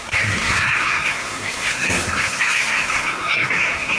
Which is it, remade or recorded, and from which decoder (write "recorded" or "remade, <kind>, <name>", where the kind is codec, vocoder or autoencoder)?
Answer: remade, codec, SNAC